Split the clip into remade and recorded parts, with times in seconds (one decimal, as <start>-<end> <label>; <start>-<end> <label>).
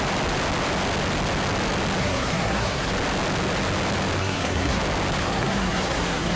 0.0-2.0 recorded; 2.0-2.9 remade; 2.9-4.2 recorded; 4.2-4.8 remade; 4.8-5.2 recorded; 5.2-6.4 remade